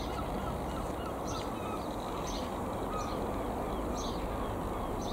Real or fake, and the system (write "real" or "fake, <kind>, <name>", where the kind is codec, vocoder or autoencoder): real